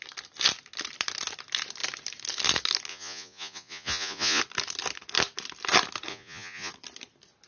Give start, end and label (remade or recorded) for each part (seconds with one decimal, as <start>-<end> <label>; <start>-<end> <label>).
0.0-2.9 recorded; 2.9-4.4 remade; 4.4-6.1 recorded; 6.1-6.7 remade; 6.7-7.5 recorded